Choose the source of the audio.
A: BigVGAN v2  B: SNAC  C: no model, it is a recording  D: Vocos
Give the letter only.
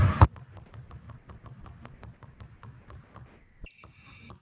C